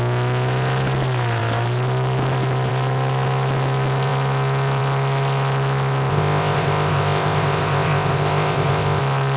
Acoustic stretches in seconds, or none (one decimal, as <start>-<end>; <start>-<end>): 0.0-6.1; 9.0-9.4